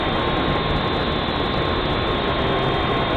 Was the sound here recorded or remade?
recorded